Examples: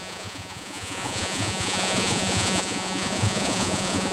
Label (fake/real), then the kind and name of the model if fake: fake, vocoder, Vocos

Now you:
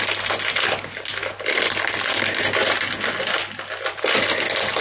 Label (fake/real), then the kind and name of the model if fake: real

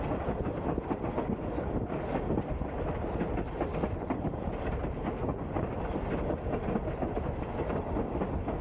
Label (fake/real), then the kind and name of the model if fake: real